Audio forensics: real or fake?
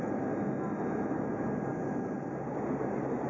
real